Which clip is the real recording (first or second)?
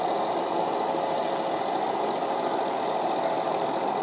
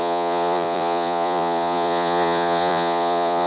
first